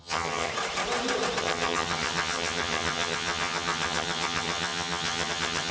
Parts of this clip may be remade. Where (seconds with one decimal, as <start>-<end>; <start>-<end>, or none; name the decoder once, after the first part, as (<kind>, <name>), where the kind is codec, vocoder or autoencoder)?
0.0-0.5 (vocoder, HiFi-GAN); 1.4-5.7